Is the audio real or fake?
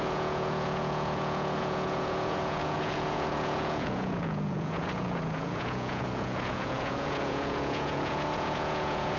fake